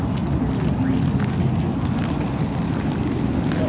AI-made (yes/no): no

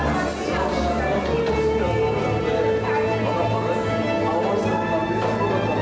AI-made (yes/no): no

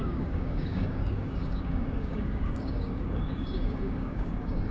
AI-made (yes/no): yes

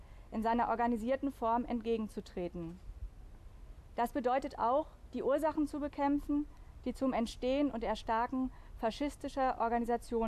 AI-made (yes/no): no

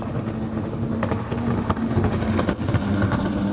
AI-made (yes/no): no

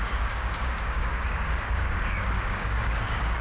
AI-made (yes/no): yes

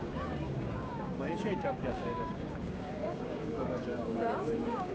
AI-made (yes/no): yes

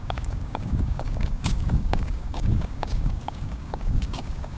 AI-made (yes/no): yes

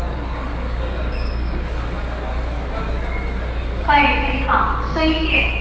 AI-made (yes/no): yes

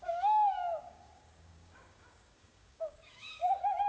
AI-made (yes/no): yes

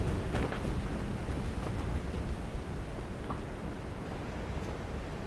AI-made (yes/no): no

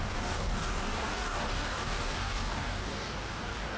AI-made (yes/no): yes